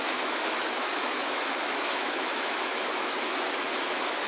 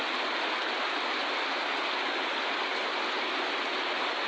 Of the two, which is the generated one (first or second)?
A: first